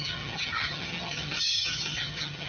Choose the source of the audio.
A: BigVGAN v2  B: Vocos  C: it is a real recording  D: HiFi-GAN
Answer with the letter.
D